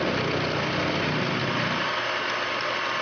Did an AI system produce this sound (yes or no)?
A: no